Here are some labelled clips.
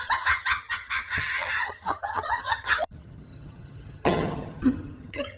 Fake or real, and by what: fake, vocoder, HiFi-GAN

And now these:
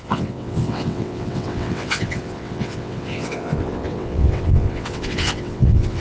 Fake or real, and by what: fake, vocoder, WaveNeXt